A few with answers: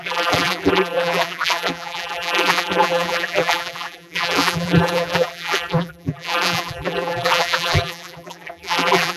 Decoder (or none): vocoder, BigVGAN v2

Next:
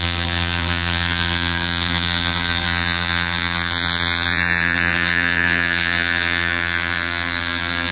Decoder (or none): vocoder, BigVGAN v2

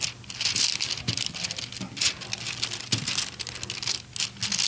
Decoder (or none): none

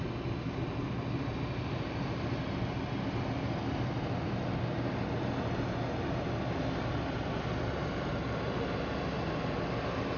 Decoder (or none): none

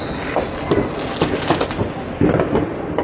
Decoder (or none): none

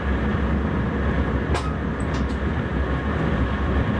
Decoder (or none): none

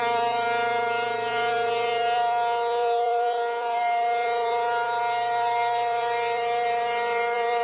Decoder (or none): vocoder, BigVGAN v2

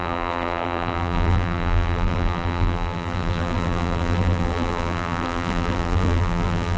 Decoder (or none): vocoder, BigVGAN v2